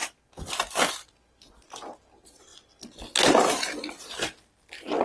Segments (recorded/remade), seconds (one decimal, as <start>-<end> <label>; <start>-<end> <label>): 0.0-5.0 recorded